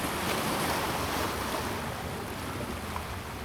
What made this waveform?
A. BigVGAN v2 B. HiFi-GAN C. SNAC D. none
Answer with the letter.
D